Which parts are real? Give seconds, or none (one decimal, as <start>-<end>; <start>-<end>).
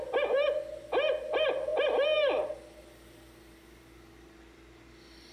0.0-5.3